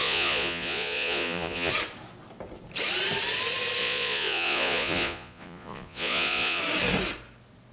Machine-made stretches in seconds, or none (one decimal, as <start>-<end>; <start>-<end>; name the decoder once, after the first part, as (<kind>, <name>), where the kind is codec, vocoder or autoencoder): 0.0-1.7 (vocoder, Vocos); 3.8-6.6